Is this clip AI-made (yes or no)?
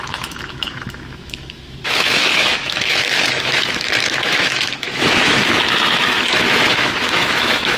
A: yes